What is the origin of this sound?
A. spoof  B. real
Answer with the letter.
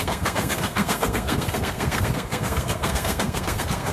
A